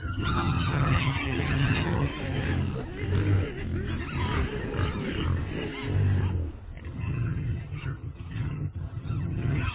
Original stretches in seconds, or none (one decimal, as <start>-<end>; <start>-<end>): 2.1-6.8

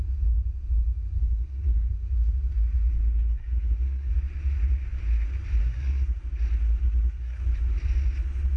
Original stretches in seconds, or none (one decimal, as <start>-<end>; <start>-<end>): 0.0-1.2; 1.9-2.9; 4.1-5.6; 6.2-6.8; 7.4-8.6